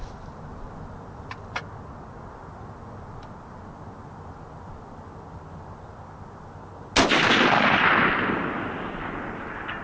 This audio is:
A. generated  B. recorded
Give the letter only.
B